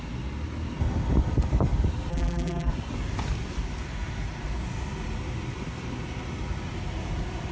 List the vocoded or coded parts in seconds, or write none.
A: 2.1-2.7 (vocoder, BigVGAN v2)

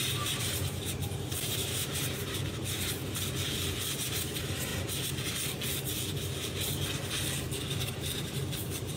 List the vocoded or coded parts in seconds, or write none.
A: 0.0-3.0 (vocoder, BigVGAN v2); 4.1-4.7; 7.7-9.0

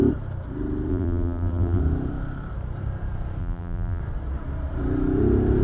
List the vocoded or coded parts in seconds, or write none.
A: 0.9-1.8 (vocoder, BigVGAN v2); 3.4-4.0

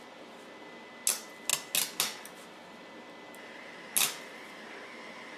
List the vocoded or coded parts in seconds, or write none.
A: none

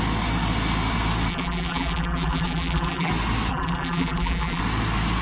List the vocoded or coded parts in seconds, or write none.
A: 1.3-3.1 (vocoder, BigVGAN v2); 3.5-4.6